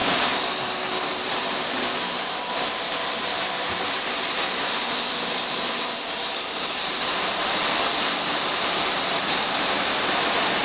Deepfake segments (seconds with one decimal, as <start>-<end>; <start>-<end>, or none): 1.1-10.6